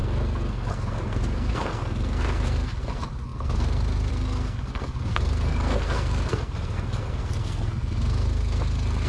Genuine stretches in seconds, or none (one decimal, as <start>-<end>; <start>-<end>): none